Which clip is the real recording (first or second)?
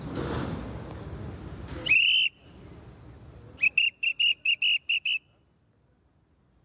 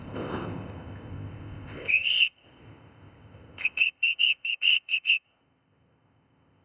first